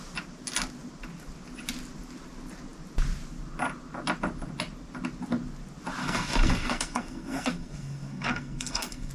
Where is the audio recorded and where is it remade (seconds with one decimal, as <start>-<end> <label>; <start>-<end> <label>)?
0.0-6.0 recorded; 6.0-9.1 remade